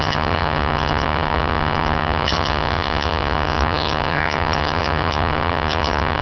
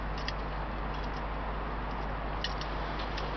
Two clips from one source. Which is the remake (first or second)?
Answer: first